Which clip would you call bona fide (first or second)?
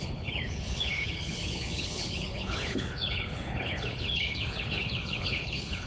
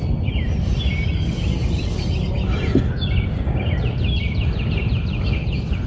second